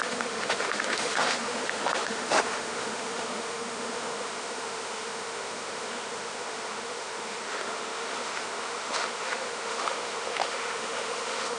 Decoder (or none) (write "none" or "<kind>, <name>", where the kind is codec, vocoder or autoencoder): autoencoder, DAC-VAE